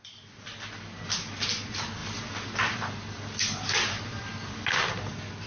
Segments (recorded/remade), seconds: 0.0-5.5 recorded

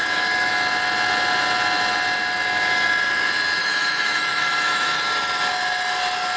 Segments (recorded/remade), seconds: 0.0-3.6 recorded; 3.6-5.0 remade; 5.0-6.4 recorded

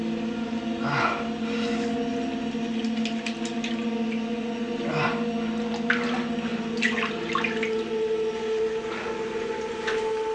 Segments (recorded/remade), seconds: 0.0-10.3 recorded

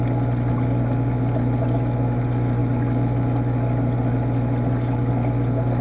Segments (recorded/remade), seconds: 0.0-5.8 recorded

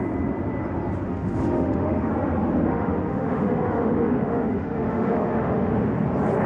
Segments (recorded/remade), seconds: 0.0-1.1 recorded; 1.1-2.1 remade; 2.1-2.7 recorded; 2.7-5.7 remade; 5.7-6.5 recorded

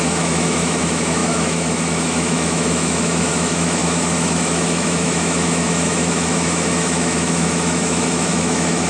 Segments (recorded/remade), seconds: 0.0-8.9 remade

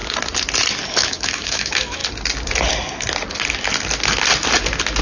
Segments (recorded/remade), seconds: 0.0-0.9 recorded; 0.9-2.0 remade; 2.0-5.0 recorded